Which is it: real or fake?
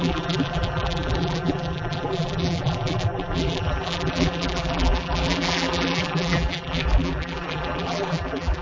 fake